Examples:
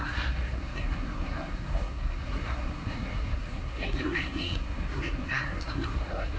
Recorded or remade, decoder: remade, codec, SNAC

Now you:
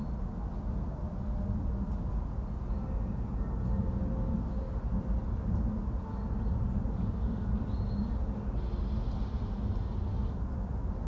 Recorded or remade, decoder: recorded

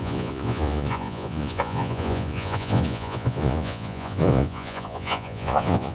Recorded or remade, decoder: remade, vocoder, Vocos